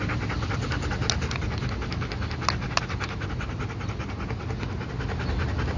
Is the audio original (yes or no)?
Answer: yes